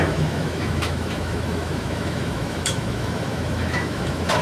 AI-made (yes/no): yes